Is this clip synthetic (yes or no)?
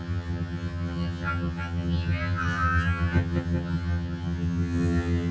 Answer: yes